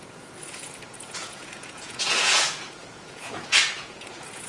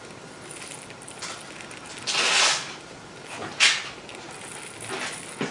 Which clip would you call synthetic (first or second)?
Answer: first